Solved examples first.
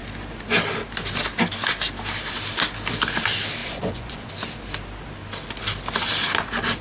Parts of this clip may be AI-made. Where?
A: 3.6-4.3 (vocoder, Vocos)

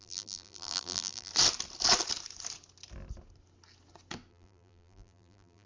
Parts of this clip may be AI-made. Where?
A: 0.0-1.3 (vocoder, BigVGAN v2); 4.3-5.7

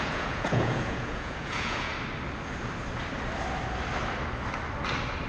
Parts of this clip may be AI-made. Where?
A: 0.0-1.9 (vocoder, Vocos)

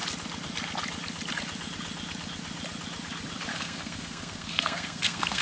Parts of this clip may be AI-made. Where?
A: 3.5-5.4 (codec, SNAC)

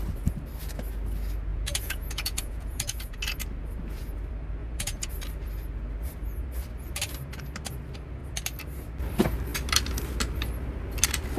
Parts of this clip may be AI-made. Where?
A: 1.5-3.2 (vocoder, Vocos); 4.6-5.1

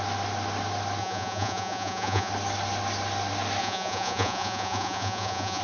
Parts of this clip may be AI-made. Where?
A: 1.0-2.3 (vocoder, Vocos); 3.6-5.6